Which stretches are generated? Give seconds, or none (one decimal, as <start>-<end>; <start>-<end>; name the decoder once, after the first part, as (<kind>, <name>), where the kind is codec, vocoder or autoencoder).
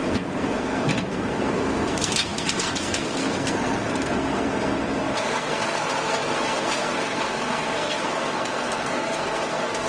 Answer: 0.0-9.9 (codec, SNAC)